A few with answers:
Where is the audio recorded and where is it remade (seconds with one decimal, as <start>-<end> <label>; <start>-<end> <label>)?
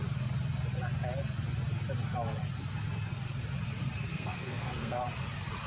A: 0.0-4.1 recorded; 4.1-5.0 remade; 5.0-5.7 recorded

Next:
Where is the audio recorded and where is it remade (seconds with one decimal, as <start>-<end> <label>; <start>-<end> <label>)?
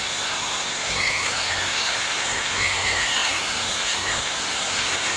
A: 0.0-5.2 remade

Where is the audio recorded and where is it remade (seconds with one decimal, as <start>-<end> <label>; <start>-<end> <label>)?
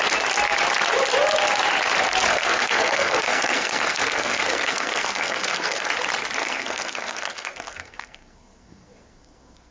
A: 0.0-2.3 recorded; 2.3-5.9 remade; 5.9-6.4 recorded; 6.4-9.7 remade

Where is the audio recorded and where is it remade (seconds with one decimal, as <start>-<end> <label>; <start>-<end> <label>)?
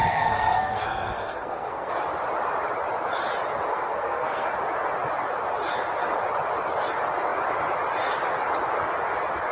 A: 0.0-1.9 remade; 1.9-3.7 recorded; 3.7-4.5 remade; 4.5-9.5 recorded